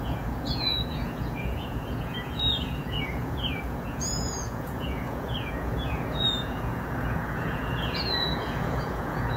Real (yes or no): no